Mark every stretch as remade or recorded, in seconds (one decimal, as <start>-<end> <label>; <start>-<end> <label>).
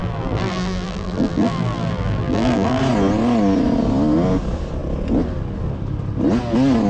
0.0-2.8 remade; 2.8-6.9 recorded